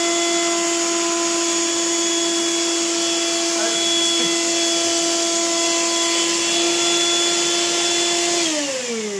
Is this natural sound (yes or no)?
yes